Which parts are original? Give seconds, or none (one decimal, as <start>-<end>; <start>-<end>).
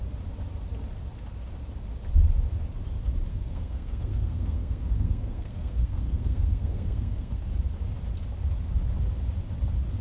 0.0-3.3; 7.5-10.0